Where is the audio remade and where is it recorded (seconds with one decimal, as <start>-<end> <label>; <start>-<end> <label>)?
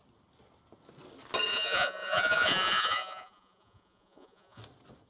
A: 0.0-1.5 recorded; 1.5-4.6 remade; 4.6-5.1 recorded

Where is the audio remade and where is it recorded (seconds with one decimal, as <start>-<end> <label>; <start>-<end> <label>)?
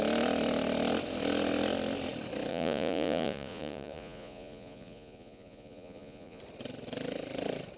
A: 0.0-2.5 recorded; 2.5-6.4 remade; 6.4-7.8 recorded